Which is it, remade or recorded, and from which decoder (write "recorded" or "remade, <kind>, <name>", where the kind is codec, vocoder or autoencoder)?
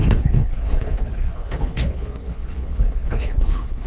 remade, codec, HILCodec